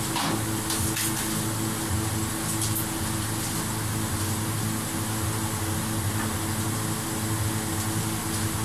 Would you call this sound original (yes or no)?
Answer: yes